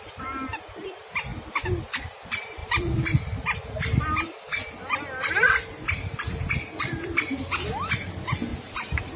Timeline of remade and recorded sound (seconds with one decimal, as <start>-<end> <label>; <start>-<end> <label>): 0.0-1.3 remade; 1.3-1.9 recorded; 1.9-9.2 remade